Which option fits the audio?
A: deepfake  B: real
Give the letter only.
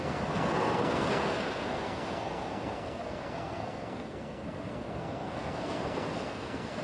A